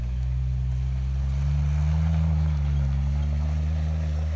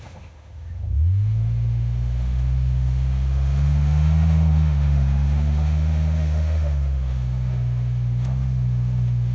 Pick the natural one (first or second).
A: first